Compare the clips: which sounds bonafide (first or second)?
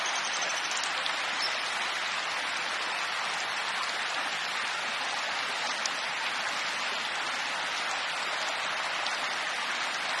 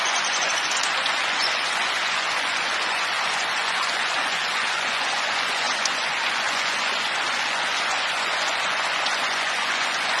first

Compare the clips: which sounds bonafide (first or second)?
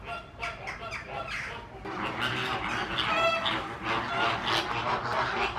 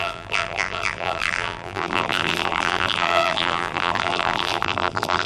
first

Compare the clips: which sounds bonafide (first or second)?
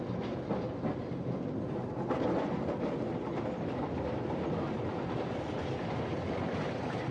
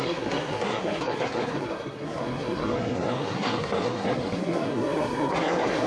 first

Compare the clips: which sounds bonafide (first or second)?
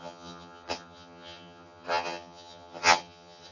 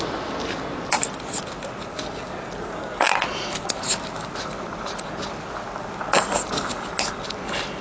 second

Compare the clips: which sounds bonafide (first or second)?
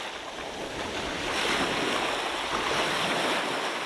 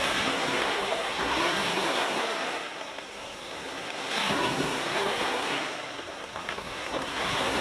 first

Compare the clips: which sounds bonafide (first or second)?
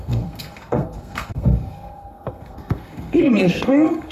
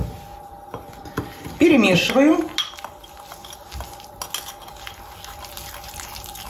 second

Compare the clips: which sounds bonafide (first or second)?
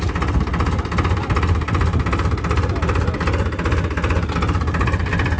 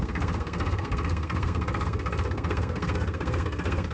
first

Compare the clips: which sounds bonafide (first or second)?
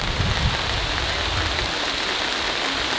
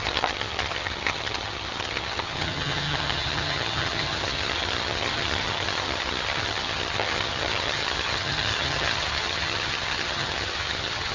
first